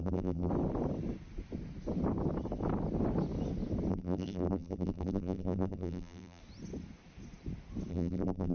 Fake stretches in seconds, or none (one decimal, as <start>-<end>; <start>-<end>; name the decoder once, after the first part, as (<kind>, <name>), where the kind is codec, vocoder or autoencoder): 0.0-0.5 (vocoder, BigVGAN v2); 3.9-6.4; 7.9-8.5

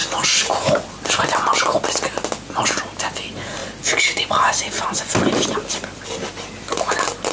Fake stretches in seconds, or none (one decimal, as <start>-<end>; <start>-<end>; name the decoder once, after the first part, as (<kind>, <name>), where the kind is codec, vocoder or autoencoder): none